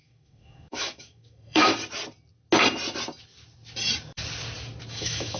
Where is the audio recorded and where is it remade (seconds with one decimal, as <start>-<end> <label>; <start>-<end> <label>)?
0.0-1.7 remade; 1.7-4.9 recorded; 4.9-5.4 remade